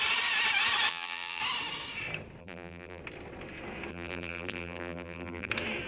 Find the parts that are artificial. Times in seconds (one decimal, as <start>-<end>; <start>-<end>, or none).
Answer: 0.9-1.4; 2.4-3.0; 3.9-5.5